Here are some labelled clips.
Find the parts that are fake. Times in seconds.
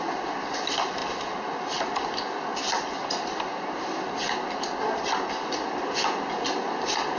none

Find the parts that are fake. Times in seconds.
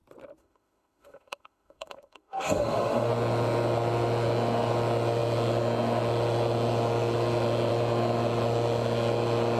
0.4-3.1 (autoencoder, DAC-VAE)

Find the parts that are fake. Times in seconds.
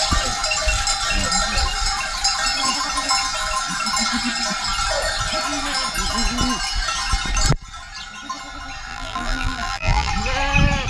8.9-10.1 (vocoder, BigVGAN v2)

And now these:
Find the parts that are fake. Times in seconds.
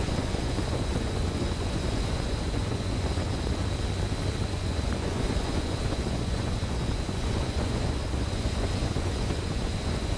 0.0-3.6 (vocoder, Vocos); 4.4-10.2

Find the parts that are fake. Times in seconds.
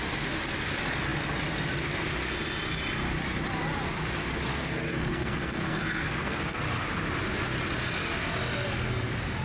4.5-6.6 (codec, SNAC)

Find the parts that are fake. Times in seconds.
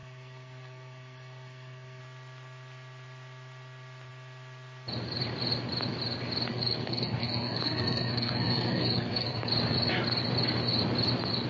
0.0-2.0 (codec, SNAC); 6.5-9.5